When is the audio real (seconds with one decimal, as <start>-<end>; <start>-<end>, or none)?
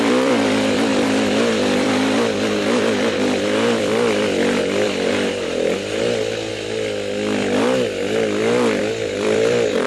6.5-8.8